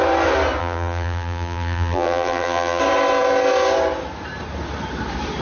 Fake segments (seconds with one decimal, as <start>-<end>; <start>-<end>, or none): 0.6-2.8